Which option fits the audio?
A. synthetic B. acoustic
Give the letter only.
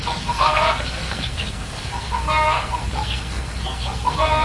A